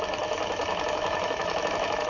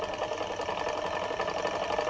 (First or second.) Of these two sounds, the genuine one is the second